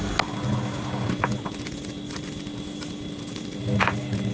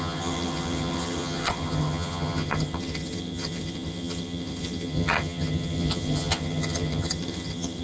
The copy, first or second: second